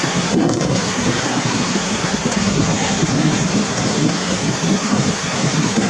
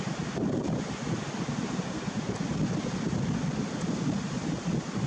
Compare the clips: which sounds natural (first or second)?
second